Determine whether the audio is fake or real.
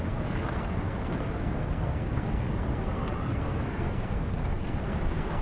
fake